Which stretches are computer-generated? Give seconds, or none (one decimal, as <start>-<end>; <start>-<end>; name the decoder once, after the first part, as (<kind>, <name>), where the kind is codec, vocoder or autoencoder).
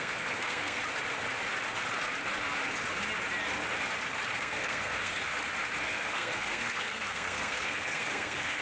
0.0-0.8 (codec, SNAC); 4.4-5.2; 5.8-8.6